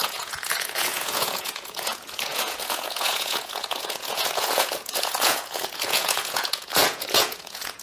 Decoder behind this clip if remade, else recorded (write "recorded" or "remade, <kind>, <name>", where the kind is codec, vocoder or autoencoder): remade, vocoder, Vocos